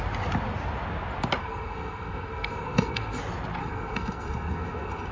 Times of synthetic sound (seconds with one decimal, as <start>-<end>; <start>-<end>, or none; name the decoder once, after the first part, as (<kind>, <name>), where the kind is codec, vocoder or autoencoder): 1.4-3.2 (codec, SNAC); 3.6-5.1